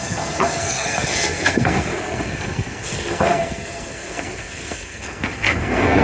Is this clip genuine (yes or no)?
no